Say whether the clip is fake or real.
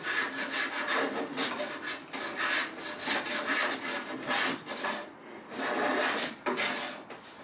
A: real